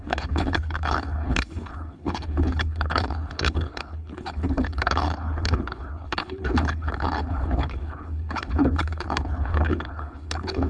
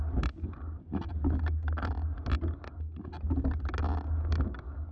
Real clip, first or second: second